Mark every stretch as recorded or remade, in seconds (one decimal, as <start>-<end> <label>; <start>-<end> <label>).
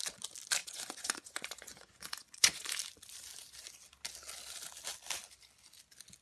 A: 0.0-0.6 recorded; 0.6-2.7 remade; 2.7-6.2 recorded